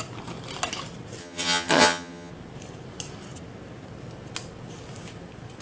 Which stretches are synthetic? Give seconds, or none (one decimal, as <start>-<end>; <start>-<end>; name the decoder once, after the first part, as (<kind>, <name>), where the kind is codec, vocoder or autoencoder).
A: 1.2-2.3 (vocoder, HiFi-GAN)